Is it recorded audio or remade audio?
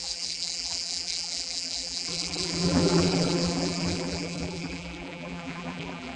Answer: remade